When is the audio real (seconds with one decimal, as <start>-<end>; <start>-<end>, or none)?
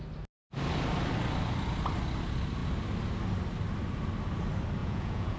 0.0-4.8